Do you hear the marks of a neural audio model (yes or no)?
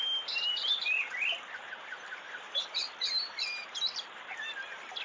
no